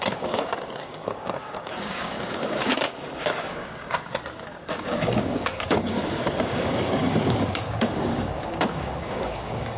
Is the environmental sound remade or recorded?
remade